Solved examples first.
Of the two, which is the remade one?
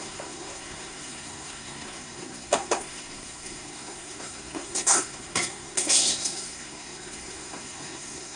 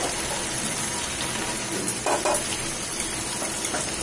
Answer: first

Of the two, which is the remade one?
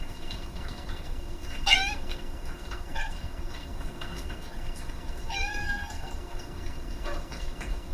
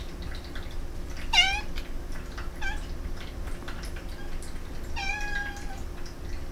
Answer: first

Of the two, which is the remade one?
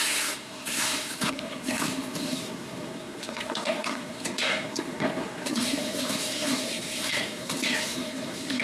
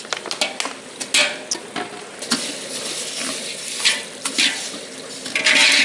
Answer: first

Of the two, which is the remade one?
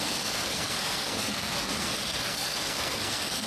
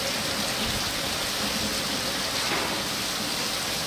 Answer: first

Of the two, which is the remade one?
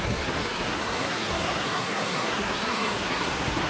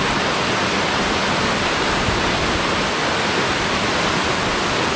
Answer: first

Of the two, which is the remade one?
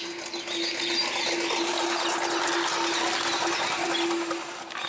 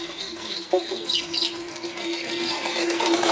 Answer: second